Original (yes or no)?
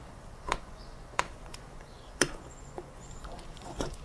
no